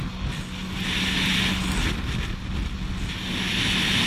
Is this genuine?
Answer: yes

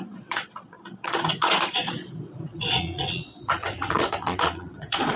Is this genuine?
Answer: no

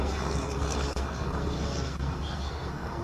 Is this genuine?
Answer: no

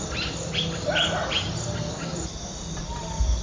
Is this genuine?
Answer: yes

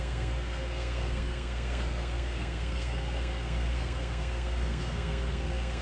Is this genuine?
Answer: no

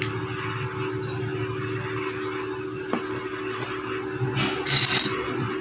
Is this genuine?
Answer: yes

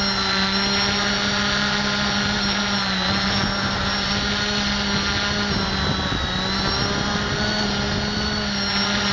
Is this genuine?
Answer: yes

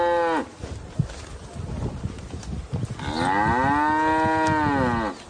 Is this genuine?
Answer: yes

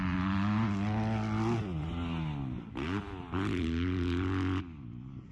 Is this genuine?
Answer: yes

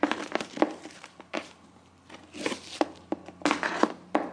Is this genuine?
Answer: yes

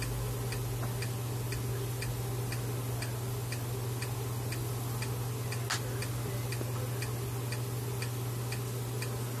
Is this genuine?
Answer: yes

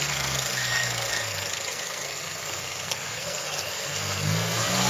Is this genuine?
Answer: no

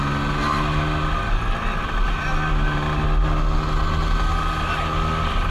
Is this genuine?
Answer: yes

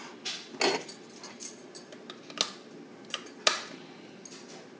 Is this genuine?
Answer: yes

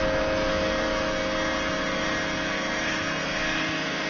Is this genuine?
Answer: yes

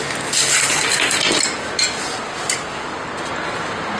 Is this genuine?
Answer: yes